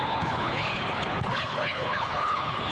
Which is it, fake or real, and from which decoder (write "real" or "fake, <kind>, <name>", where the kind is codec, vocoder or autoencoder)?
fake, codec, HILCodec